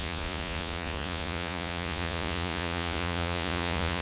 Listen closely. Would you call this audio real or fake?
fake